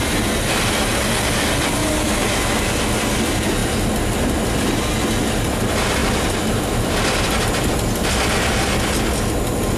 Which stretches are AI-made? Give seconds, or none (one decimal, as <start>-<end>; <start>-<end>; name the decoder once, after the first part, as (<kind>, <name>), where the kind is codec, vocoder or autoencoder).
6.0-7.7 (vocoder, BigVGAN v2)